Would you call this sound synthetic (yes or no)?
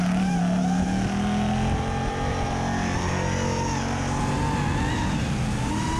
no